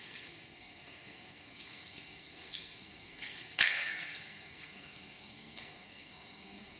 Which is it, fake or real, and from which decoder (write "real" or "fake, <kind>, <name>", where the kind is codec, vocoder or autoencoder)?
fake, codec, SNAC